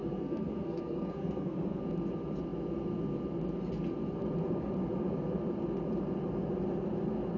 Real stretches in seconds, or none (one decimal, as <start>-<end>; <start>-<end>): 1.8-7.4